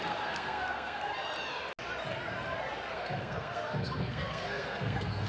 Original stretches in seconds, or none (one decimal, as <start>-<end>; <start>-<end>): 1.1-2.9